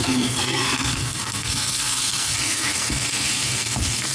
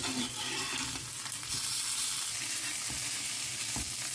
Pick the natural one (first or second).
second